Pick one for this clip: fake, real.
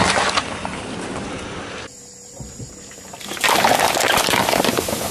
fake